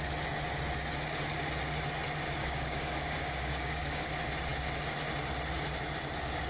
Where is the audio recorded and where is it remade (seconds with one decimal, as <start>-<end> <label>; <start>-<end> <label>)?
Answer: 0.0-2.4 recorded; 2.4-4.1 remade; 4.1-6.5 recorded